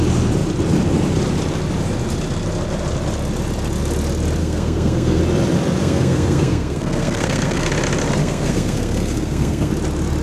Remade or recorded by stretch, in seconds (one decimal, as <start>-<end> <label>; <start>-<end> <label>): 0.0-4.4 recorded; 4.4-5.2 remade; 5.2-5.8 recorded; 5.8-7.7 remade; 7.7-8.2 recorded; 8.2-9.7 remade; 9.7-10.2 recorded